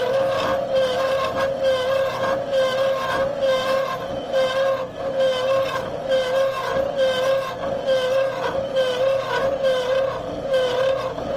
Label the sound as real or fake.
real